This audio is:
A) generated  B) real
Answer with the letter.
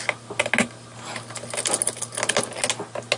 B